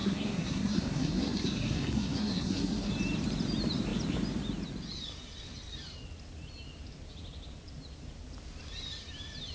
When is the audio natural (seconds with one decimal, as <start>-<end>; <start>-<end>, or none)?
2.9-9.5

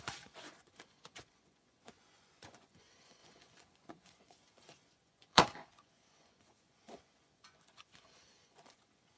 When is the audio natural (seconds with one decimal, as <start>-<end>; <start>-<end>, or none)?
none

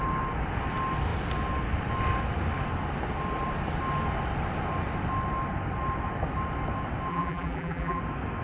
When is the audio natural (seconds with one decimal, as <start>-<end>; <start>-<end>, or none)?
0.0-7.1; 8.0-8.4

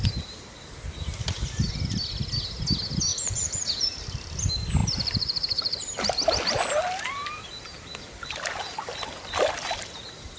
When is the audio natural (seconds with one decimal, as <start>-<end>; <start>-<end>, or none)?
0.0-3.1; 3.9-10.4

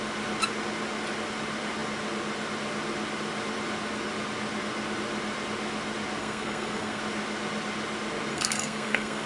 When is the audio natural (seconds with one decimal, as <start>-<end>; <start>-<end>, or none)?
0.0-6.2; 7.0-8.3

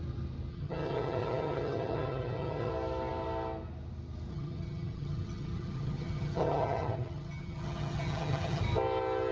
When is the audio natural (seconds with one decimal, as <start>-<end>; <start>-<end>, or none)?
0.0-0.5; 2.7-4.3; 8.6-9.3

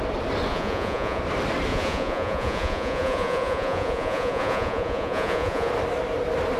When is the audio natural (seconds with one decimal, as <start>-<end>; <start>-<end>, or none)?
0.0-0.5; 1.2-1.7; 5.7-6.6